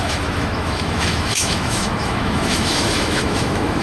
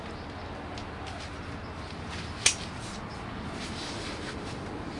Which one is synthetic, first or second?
first